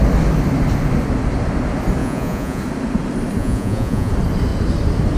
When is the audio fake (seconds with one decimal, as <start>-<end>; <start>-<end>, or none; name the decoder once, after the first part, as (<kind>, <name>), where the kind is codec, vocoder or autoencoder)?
2.0-2.6 (vocoder, Vocos); 3.4-4.1